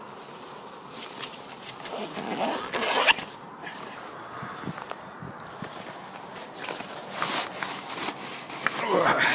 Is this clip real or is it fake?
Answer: real